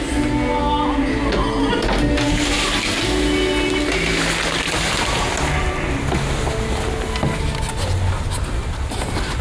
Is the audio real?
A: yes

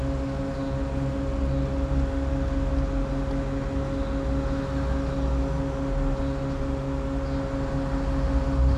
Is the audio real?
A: yes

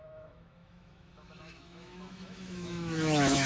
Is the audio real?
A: no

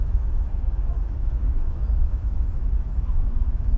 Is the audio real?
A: no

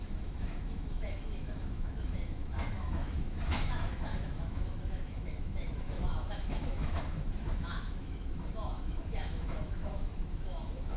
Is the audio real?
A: no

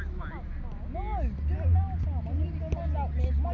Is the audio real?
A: yes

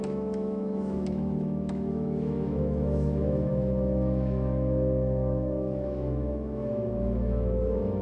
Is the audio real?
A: no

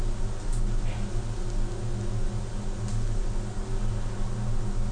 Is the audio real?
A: yes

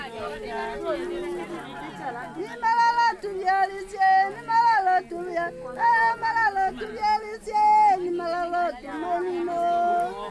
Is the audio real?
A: yes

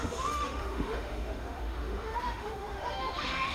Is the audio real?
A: no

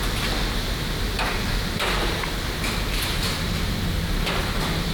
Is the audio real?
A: yes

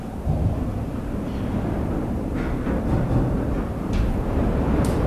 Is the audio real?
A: yes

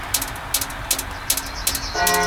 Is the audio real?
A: yes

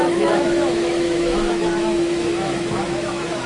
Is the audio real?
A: no